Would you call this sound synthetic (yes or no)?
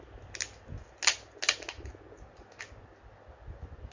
no